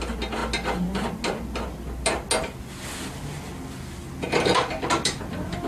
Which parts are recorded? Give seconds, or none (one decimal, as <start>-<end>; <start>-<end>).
0.0-5.7